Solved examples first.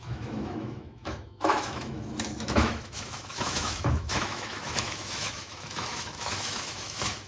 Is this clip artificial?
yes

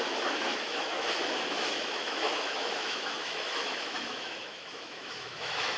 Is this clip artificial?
yes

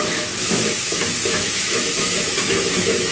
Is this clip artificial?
yes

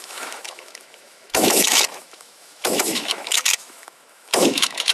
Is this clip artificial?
yes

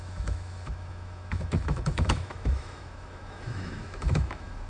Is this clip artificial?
yes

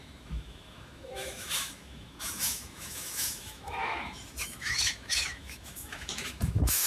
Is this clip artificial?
yes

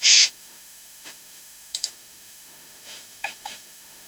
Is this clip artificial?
yes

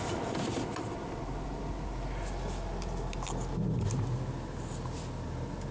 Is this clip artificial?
no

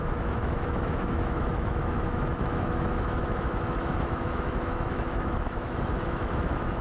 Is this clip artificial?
yes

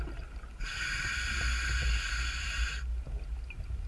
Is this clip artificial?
no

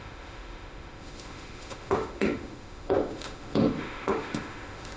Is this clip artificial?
yes